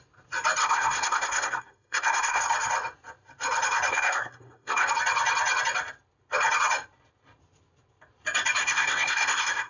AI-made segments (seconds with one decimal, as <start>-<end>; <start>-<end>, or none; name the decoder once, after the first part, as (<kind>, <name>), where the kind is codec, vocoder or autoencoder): 0.6-2.4 (codec, SNAC); 3.9-4.9; 8.6-9.7